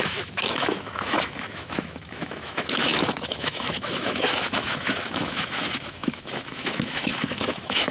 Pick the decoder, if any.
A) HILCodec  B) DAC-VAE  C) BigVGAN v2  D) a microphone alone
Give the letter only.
B